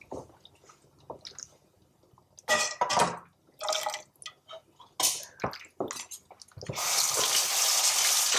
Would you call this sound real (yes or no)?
yes